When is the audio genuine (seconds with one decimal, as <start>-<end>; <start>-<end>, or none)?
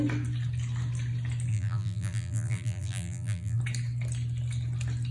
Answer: 0.0-1.5; 3.6-5.1